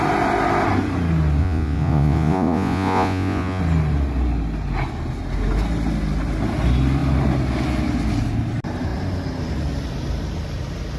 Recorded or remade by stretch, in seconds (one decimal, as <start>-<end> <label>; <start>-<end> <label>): 0.0-1.4 recorded; 1.4-3.6 remade; 3.6-11.0 recorded

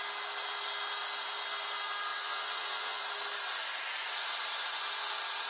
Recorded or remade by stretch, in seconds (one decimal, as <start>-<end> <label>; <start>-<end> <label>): 0.0-2.1 recorded; 2.1-3.0 remade; 3.0-5.5 recorded

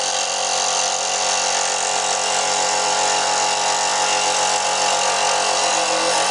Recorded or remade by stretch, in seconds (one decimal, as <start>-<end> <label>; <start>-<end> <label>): 0.0-6.3 recorded